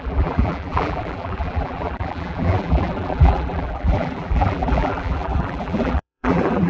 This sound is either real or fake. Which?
fake